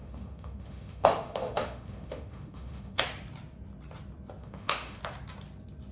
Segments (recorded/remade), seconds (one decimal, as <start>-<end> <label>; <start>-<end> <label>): 0.0-3.0 remade; 3.0-4.4 recorded; 4.4-5.0 remade; 5.0-5.9 recorded